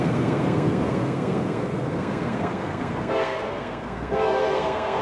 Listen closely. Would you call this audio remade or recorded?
remade